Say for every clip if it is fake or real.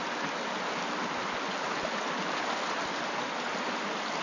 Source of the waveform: real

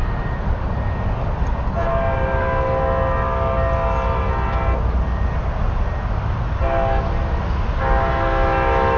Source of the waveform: real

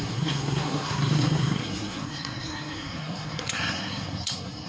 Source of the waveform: fake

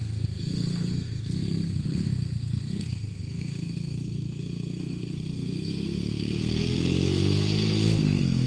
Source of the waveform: fake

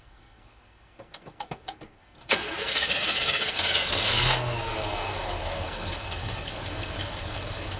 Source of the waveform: fake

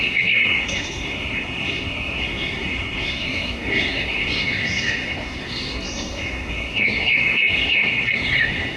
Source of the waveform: fake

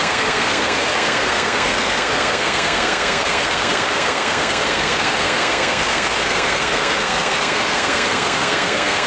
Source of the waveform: fake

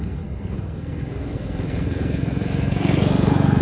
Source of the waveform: fake